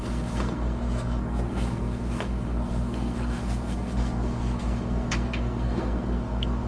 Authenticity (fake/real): fake